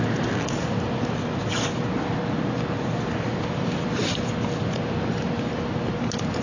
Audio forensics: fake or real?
real